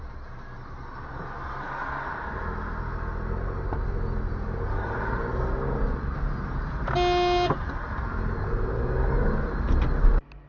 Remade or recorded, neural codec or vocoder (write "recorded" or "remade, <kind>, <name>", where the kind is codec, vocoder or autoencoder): recorded